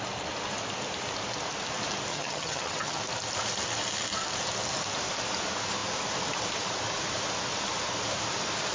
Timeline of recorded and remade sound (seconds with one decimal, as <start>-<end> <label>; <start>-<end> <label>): 0.0-2.1 recorded; 2.1-3.0 remade; 3.0-8.7 recorded